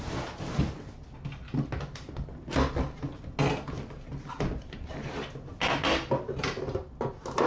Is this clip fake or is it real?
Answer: real